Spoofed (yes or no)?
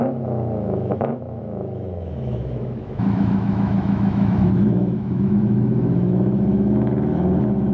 yes